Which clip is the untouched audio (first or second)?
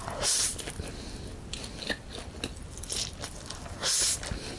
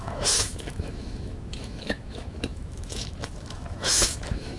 first